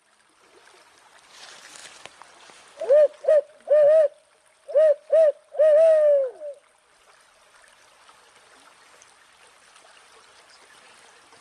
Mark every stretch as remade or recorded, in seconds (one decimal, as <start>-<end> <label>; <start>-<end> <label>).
0.0-11.4 recorded